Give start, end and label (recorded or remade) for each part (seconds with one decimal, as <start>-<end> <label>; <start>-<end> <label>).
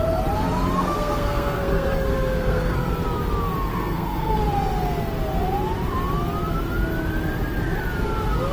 0.0-0.8 recorded; 0.8-2.9 remade; 2.9-3.7 recorded; 3.7-4.4 remade; 4.4-8.5 recorded